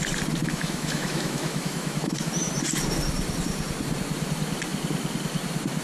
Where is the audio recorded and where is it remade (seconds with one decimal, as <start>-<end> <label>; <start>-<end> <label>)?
0.0-0.4 recorded; 0.4-2.3 remade; 2.3-5.8 recorded